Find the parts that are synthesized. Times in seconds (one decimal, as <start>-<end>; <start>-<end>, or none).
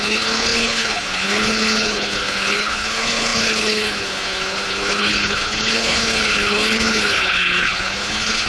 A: 0.0-8.5